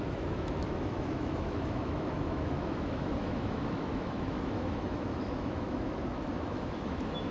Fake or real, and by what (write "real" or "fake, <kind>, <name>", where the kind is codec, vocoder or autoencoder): fake, autoencoder, DAC-VAE